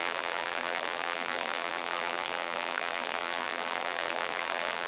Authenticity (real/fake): fake